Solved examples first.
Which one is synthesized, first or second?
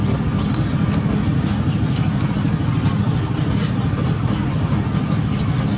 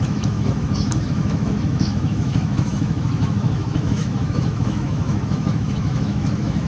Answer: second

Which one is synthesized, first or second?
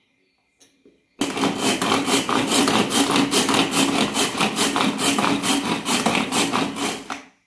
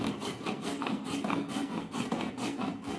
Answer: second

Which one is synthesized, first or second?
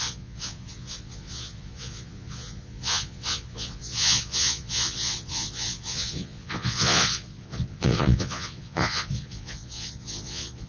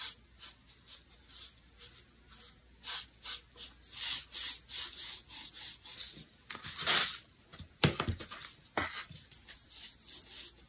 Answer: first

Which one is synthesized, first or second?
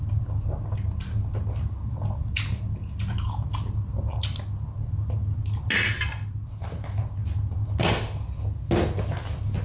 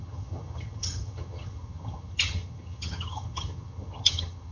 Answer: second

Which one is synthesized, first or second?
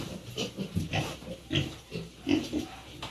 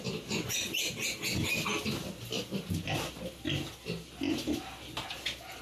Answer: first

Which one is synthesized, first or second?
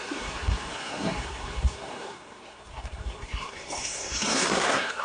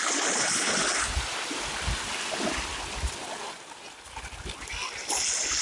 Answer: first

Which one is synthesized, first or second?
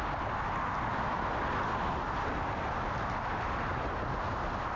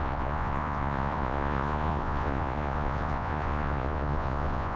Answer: second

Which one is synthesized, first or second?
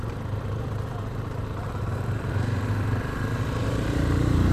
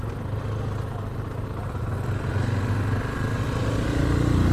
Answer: first